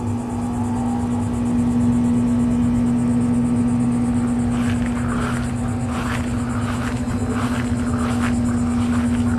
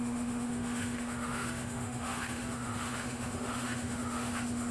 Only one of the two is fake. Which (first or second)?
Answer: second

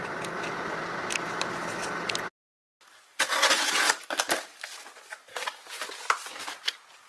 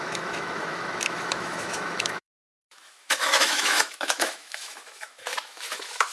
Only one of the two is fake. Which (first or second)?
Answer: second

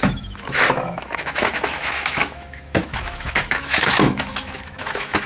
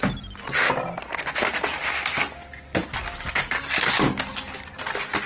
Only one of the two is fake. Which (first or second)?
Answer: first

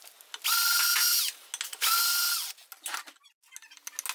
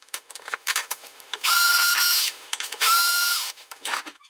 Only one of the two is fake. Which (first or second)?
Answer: second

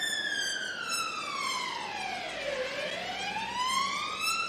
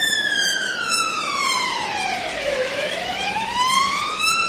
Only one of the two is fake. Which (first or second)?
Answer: second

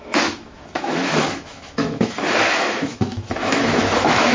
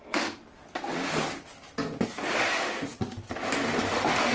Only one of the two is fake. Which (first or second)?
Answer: first